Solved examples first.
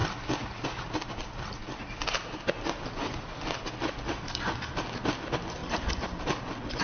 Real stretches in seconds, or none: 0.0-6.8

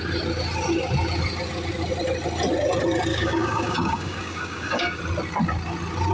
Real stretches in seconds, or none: 0.0-3.1; 5.0-6.1